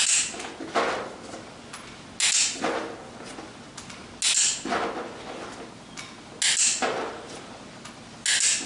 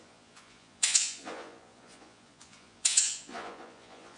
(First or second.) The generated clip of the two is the second